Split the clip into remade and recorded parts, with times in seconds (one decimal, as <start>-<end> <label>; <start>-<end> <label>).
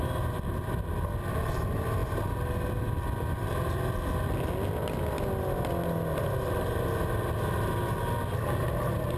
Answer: 0.0-9.2 recorded